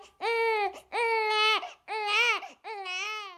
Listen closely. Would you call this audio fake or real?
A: real